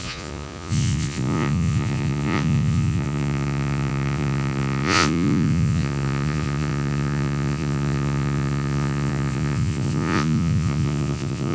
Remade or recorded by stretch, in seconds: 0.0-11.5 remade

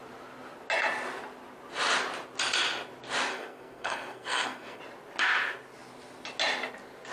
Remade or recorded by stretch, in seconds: 0.0-3.3 recorded; 3.3-4.8 remade; 4.8-7.1 recorded

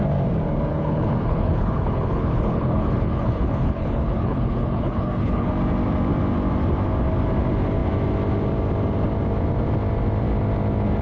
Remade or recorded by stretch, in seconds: 0.0-0.7 recorded; 0.7-5.5 remade; 5.5-11.0 recorded

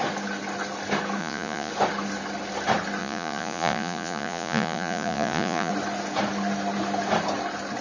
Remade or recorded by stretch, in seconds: 0.0-1.2 recorded; 1.2-1.7 remade; 1.7-3.0 recorded; 3.0-5.7 remade; 5.7-7.8 recorded

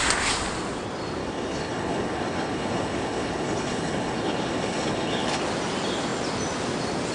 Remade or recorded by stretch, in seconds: 0.0-1.2 recorded; 1.2-5.4 remade; 5.4-7.1 recorded